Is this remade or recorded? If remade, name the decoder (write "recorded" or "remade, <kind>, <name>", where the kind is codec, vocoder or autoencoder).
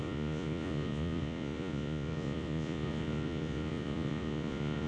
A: remade, vocoder, Vocos